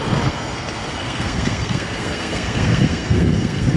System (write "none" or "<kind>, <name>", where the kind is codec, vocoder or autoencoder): codec, SNAC